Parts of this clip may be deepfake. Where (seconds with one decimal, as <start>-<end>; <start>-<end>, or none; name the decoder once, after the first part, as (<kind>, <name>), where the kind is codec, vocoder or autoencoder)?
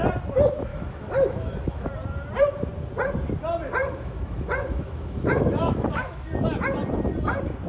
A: 0.7-1.9 (autoencoder, DAC-VAE); 3.8-6.2